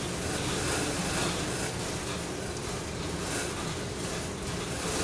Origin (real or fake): real